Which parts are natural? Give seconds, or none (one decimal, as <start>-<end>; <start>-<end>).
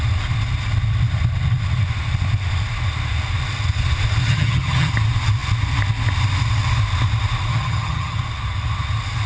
0.0-4.2; 4.9-7.5; 8.2-9.3